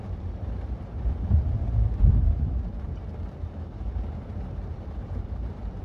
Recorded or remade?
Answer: remade